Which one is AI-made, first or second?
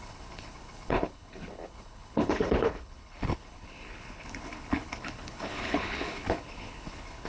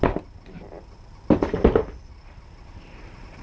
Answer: first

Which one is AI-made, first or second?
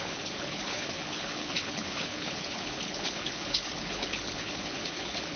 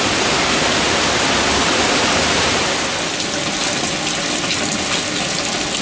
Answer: first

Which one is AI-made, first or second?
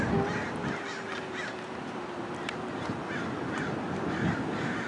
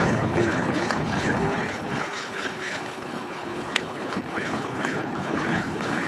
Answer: second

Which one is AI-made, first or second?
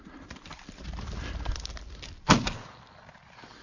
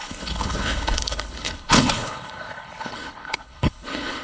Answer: second